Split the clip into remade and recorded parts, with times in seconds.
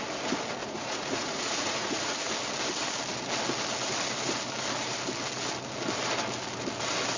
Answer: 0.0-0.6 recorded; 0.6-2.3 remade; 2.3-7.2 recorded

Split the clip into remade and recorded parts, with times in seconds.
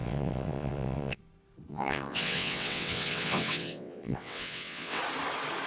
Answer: 0.0-1.2 remade; 1.2-1.7 recorded; 1.7-5.0 remade; 5.0-5.7 recorded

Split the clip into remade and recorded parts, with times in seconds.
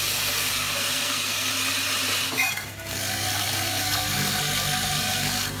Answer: 0.0-1.5 remade; 1.5-2.3 recorded; 2.3-5.6 remade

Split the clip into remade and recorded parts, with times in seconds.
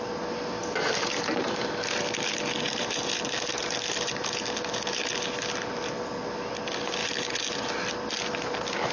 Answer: 0.0-0.6 recorded; 0.6-2.3 remade; 2.3-7.0 recorded; 7.0-7.9 remade; 7.9-8.9 recorded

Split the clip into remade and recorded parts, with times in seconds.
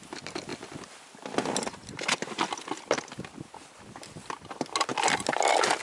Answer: 0.0-5.8 recorded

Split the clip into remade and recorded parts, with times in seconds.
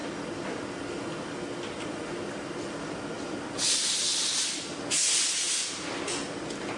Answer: 0.0-6.8 recorded